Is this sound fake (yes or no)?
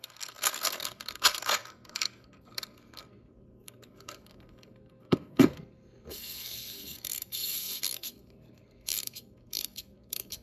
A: yes